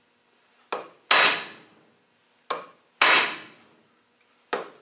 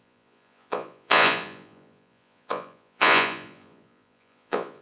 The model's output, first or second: second